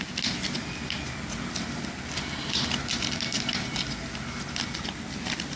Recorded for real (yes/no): yes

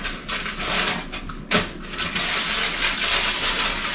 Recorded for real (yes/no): yes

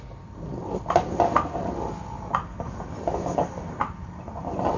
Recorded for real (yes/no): yes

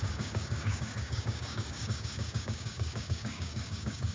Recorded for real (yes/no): no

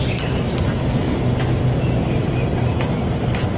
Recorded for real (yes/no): yes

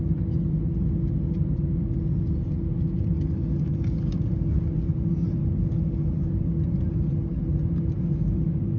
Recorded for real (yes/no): yes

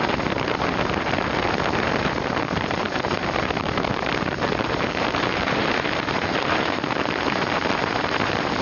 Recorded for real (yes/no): no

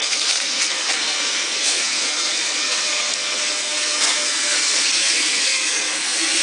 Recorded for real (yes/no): no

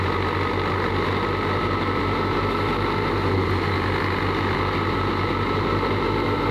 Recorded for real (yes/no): yes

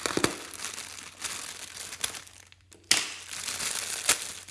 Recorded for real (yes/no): yes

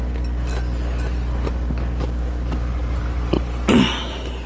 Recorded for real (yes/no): yes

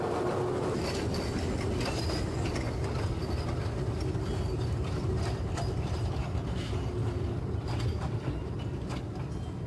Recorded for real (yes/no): yes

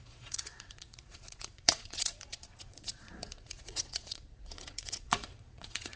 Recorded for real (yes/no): no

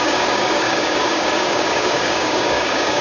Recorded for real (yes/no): no